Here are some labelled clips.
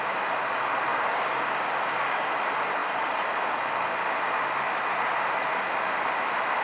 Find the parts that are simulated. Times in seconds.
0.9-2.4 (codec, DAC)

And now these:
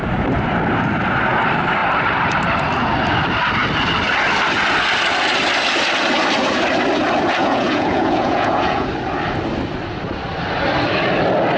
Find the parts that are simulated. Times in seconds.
7.4-8.9 (vocoder, Vocos)

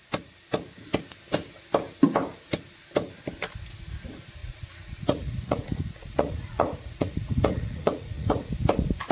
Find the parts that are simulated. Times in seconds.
4.4-8.5 (vocoder, Vocos)

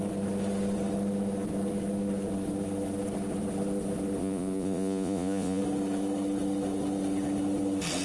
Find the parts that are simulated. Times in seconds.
4.2-5.6 (vocoder, Vocos)

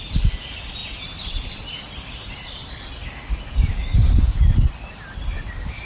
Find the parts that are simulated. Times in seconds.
3.0-4.4 (codec, DAC)